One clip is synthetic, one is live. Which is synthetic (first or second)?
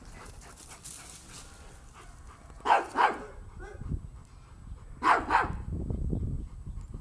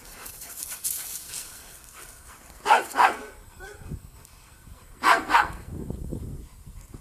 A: second